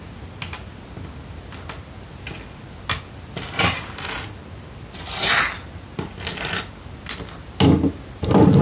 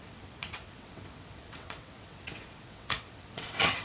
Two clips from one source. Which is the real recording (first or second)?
first